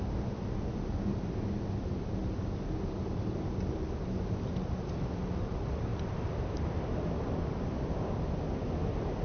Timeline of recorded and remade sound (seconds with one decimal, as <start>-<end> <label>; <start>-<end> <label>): 0.0-9.2 recorded